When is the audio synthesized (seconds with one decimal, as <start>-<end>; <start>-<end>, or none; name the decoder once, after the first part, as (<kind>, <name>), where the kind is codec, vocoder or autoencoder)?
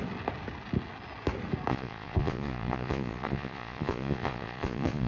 1.7-5.1 (vocoder, Vocos)